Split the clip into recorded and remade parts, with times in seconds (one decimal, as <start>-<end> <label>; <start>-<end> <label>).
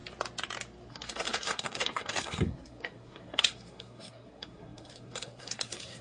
0.0-0.9 recorded; 0.9-6.0 remade